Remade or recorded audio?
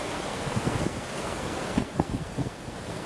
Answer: remade